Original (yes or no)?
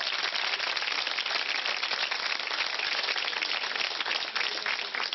yes